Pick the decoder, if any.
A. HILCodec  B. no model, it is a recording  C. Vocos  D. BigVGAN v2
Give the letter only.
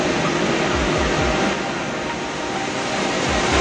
B